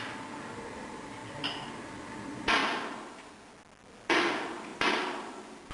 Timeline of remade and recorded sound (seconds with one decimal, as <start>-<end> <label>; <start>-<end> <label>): 0.0-5.7 recorded

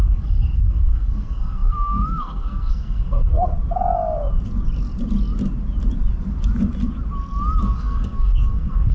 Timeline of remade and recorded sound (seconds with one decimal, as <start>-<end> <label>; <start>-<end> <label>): 0.0-3.5 remade; 3.5-7.6 recorded; 7.6-8.9 remade